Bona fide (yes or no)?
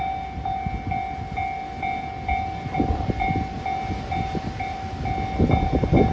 yes